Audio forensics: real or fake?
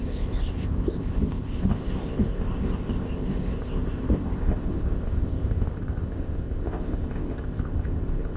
fake